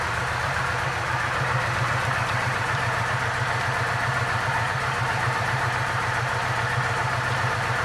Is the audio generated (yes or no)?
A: yes